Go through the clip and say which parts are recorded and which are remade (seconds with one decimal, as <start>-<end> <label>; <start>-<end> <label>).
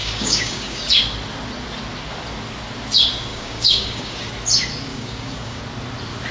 0.0-0.9 remade; 0.9-3.3 recorded; 3.3-4.3 remade; 4.3-4.9 recorded; 4.9-5.6 remade; 5.6-6.3 recorded